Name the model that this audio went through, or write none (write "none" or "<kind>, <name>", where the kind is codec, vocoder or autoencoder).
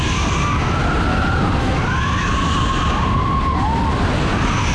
none